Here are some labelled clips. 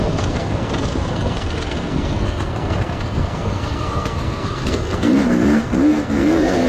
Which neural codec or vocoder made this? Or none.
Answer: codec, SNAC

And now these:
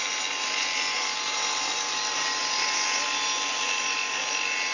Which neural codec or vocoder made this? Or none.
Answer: none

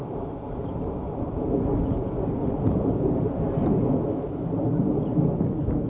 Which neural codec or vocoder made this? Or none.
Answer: none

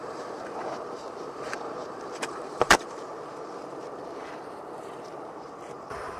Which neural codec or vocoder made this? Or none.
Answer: vocoder, BigVGAN v2